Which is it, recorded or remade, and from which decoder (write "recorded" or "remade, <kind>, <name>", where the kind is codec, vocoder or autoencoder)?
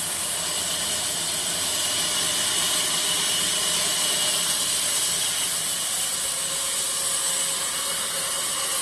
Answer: recorded